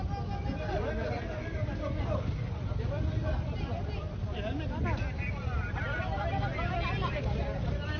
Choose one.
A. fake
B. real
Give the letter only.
B